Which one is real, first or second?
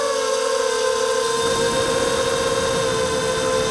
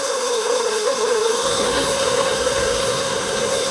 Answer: first